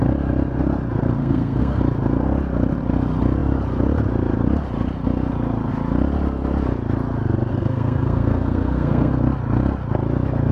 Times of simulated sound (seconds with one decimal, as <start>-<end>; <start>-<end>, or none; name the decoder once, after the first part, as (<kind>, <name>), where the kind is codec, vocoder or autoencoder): 1.2-1.8 (codec, SNAC); 7.5-9.1